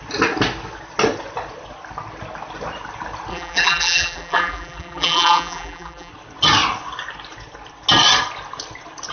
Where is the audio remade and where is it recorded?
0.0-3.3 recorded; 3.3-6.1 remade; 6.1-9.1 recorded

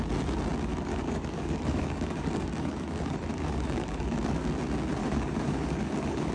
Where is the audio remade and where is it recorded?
0.0-0.7 recorded; 0.7-4.5 remade; 4.5-5.0 recorded; 5.0-6.3 remade

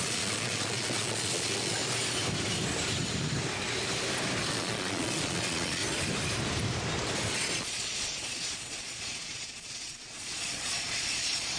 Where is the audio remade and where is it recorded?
0.0-1.8 remade; 1.8-4.5 recorded; 4.5-5.8 remade; 5.8-7.6 recorded; 7.6-11.6 remade

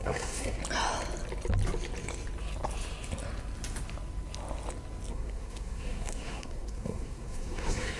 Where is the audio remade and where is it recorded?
0.0-0.6 remade; 0.6-5.1 recorded; 5.1-8.0 remade

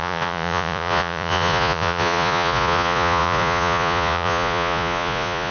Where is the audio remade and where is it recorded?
0.0-5.5 remade

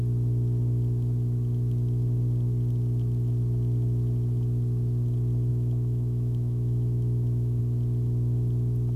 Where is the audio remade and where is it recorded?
0.0-5.5 recorded; 5.5-7.6 remade; 7.6-9.0 recorded